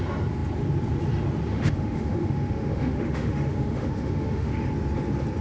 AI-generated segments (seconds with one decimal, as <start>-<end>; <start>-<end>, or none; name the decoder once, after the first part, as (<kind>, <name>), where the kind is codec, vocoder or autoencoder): 1.5-4.7 (autoencoder, DAC-VAE)